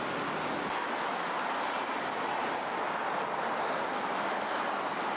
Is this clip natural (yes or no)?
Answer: yes